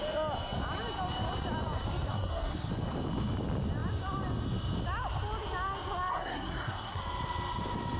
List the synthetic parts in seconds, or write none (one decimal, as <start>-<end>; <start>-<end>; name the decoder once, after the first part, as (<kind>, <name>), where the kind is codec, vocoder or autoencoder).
2.1-2.7 (codec, SNAC); 6.1-7.0